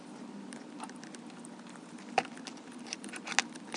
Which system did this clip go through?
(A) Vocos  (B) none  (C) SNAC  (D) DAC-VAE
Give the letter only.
B